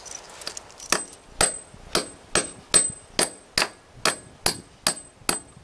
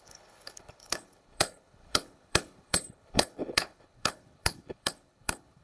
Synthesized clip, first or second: second